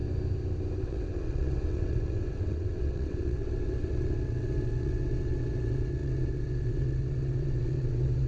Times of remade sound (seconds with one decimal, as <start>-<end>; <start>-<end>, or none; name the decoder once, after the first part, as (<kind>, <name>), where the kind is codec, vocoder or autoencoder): 0.8-8.3 (vocoder, WaveNeXt)